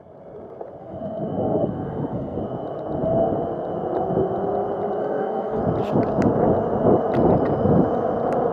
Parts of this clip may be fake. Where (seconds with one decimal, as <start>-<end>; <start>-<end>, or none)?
0.8-2.4; 5.0-5.6